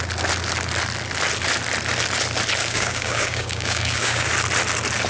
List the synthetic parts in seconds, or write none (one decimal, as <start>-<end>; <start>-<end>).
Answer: 2.6-4.3